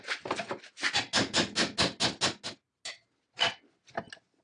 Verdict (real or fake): real